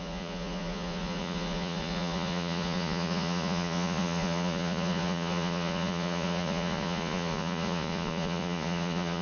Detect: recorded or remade remade